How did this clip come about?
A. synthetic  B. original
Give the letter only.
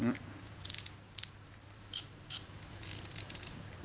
A